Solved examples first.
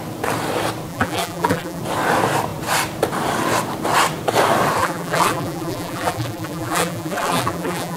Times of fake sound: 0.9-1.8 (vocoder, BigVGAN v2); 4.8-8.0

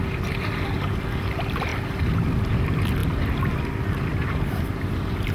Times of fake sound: none

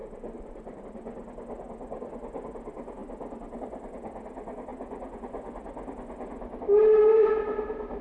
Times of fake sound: 0.0-0.8 (vocoder, BigVGAN v2)

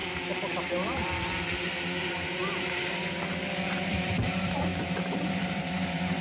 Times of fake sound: 0.6-1.0 (vocoder, BigVGAN v2); 2.0-4.7; 5.3-6.2

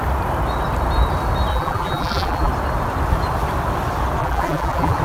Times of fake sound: 1.5-2.5 (vocoder, BigVGAN v2); 4.2-5.0

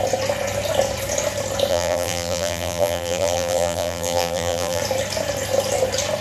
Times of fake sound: 1.7-4.8 (vocoder, BigVGAN v2)

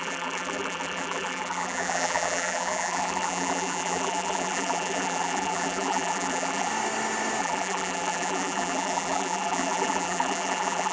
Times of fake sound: 0.0-6.7 (vocoder, BigVGAN v2); 7.4-10.9

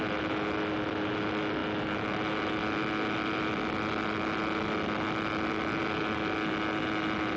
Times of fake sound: none